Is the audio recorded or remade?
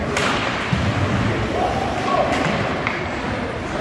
remade